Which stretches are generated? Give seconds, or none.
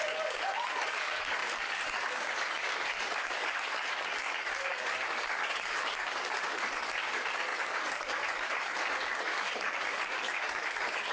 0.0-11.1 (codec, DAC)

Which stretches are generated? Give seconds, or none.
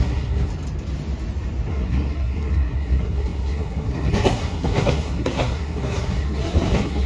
0.0-0.5 (codec, SNAC); 1.7-7.1